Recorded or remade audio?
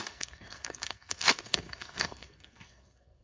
remade